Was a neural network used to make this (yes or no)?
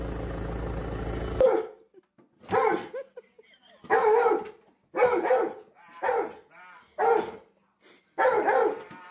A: no